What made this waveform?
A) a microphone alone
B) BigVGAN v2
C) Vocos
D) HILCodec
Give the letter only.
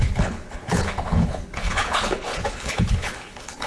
D